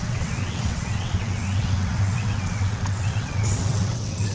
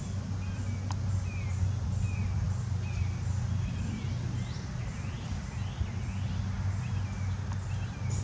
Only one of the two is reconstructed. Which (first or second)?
first